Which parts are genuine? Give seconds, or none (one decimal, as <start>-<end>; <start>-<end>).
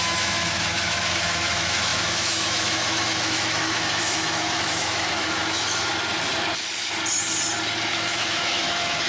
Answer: 5.9-7.9